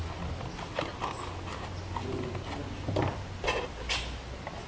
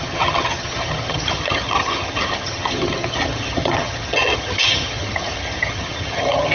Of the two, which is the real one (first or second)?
first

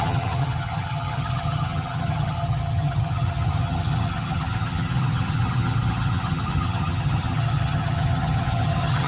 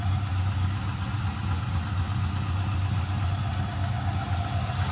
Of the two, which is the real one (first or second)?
second